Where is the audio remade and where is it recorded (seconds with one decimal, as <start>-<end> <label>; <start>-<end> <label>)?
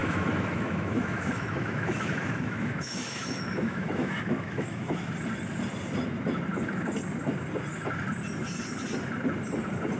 0.0-5.1 remade; 5.1-10.0 recorded